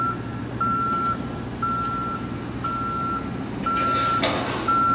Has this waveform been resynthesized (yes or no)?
no